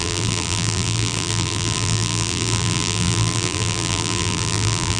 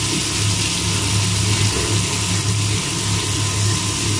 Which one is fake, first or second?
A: first